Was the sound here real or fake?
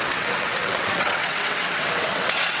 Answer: fake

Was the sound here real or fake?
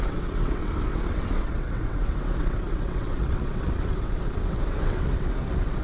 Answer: fake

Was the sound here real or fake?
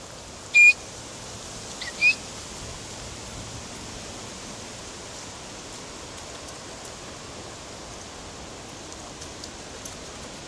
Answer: real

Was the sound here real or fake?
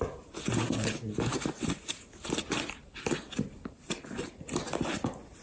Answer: real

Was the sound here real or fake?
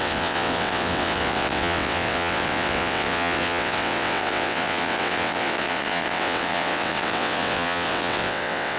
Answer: fake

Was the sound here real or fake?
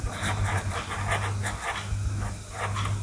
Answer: real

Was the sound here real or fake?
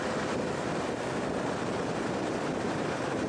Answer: real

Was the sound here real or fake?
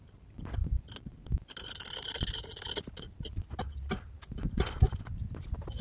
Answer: real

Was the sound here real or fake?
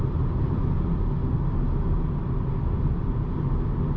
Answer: real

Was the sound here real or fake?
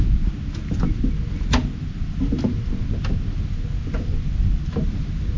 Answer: real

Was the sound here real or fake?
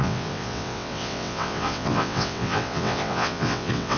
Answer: fake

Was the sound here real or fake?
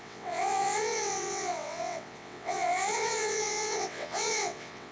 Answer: fake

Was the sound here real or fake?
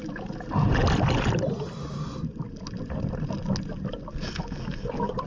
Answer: real